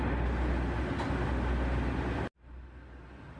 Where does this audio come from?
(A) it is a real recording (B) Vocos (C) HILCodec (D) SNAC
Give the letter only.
A